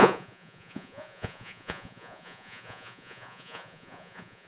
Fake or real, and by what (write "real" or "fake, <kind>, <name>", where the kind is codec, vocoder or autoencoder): fake, vocoder, Vocos